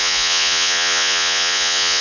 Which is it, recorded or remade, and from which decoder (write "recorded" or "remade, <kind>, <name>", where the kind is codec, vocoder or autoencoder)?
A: remade, vocoder, Vocos